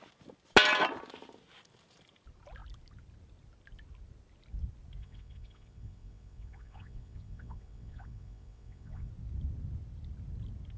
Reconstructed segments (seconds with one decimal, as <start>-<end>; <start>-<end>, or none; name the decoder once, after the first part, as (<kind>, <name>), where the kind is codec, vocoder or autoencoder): 5.0-9.1 (vocoder, WaveNeXt)